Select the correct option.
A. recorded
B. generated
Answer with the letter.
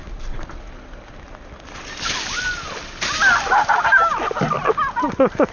A